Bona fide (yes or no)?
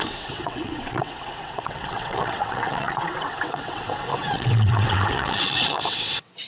no